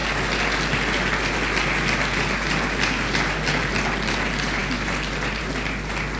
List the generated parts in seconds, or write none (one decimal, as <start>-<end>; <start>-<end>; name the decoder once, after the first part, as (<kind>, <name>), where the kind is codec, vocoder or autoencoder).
none